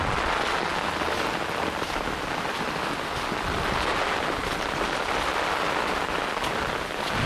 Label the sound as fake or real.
real